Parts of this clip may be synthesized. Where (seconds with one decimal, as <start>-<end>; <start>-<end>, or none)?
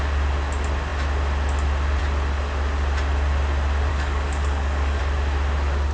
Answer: 3.9-5.0